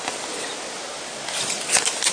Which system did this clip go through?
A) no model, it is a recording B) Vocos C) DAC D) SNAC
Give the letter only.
A